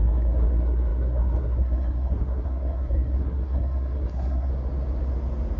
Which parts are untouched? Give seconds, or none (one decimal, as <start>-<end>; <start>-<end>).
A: 4.5-5.6